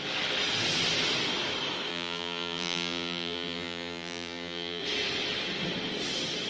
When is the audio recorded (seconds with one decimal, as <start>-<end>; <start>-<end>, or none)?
0.0-1.9; 4.8-6.5